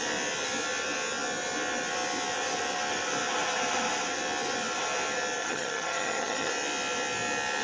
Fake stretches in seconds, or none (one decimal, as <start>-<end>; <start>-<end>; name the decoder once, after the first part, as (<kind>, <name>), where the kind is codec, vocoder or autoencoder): 5.4-6.5 (vocoder, HiFi-GAN)